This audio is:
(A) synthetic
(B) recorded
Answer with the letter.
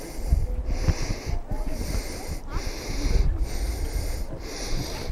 B